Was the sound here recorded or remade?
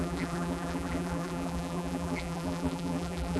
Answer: remade